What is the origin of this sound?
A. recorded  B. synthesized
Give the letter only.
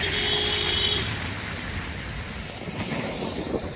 A